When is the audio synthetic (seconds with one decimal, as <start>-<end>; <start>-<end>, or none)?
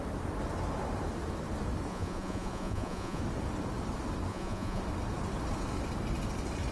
1.9-3.2; 4.3-4.8